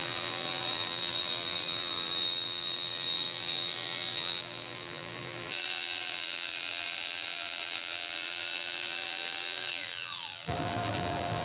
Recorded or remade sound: remade